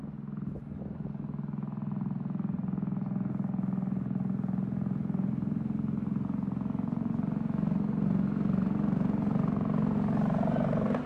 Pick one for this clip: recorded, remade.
recorded